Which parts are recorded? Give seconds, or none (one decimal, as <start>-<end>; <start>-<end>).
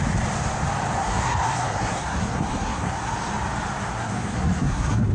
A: 0.0-1.0; 3.1-3.9